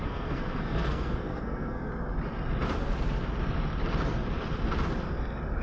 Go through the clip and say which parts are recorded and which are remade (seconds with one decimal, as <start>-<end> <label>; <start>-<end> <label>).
0.0-1.9 remade; 1.9-5.6 recorded